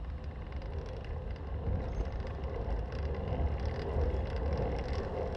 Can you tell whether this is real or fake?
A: real